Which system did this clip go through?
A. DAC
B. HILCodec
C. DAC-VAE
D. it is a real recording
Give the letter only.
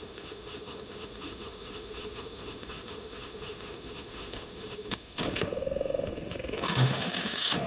C